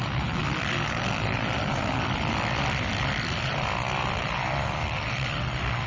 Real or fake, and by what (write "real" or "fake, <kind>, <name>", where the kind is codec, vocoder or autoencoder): real